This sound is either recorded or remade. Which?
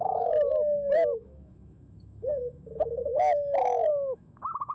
remade